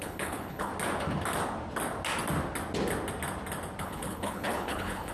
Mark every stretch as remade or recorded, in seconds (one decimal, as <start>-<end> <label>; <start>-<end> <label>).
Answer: 0.0-0.7 remade; 0.7-3.8 recorded; 3.8-5.1 remade

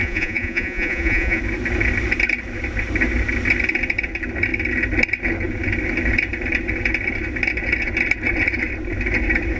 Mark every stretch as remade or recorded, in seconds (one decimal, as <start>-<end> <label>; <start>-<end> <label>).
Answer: 0.0-1.4 remade; 1.4-9.6 recorded

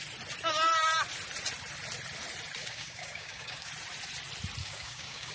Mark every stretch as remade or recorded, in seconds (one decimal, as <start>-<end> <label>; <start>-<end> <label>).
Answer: 0.0-2.6 recorded; 2.6-3.7 remade; 3.7-4.6 recorded; 4.6-5.3 remade

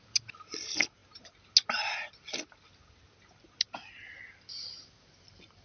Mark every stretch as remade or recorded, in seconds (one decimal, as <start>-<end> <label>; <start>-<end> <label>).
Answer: 0.0-5.6 recorded

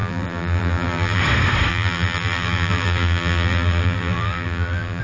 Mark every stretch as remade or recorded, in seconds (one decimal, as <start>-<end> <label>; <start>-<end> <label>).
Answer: 0.0-1.2 remade; 1.2-1.7 recorded; 1.7-5.0 remade

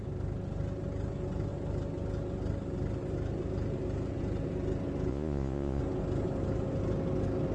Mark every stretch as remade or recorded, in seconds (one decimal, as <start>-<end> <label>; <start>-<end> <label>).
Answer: 0.0-5.1 recorded; 5.1-5.8 remade; 5.8-7.5 recorded

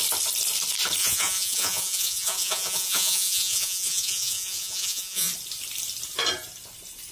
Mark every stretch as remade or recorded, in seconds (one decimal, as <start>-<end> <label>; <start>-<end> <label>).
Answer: 0.0-1.0 recorded; 1.0-5.3 remade; 5.3-7.1 recorded

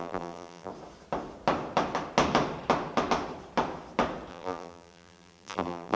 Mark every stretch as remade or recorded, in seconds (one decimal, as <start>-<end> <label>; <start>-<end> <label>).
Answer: 0.0-0.7 remade; 0.7-4.3 recorded; 4.3-6.0 remade